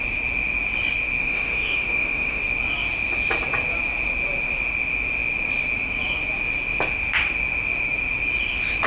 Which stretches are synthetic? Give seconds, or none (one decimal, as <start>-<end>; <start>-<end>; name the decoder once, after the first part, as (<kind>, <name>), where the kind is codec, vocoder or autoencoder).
1.2-2.4 (autoencoder, DAC-VAE)